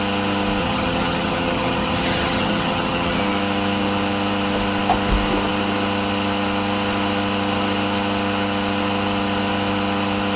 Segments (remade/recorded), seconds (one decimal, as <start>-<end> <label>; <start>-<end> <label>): 0.0-0.6 recorded; 0.6-3.2 remade; 3.2-10.4 recorded